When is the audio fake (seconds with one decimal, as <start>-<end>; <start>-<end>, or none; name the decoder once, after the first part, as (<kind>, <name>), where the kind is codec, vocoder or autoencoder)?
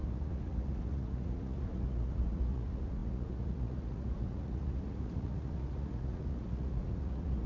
0.0-7.5 (vocoder, Vocos)